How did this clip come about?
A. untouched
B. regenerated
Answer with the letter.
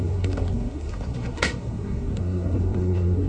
B